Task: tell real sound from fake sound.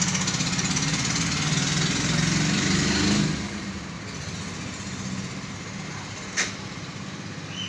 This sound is real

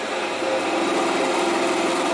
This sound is real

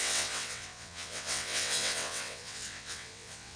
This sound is fake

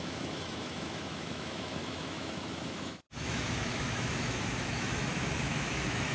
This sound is fake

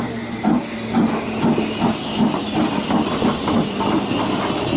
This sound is real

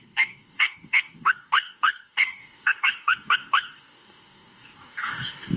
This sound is fake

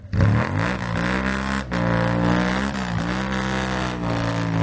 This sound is real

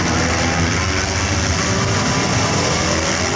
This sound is real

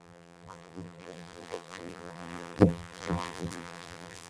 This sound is fake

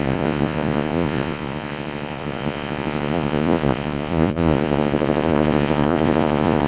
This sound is fake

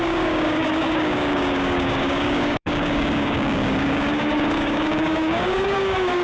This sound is fake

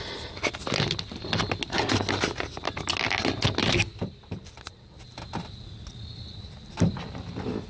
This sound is real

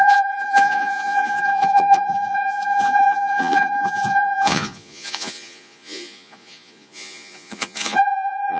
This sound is fake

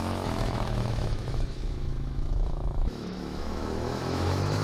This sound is fake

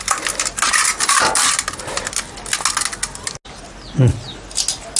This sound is real